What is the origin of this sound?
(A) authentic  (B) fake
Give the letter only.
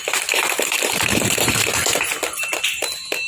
B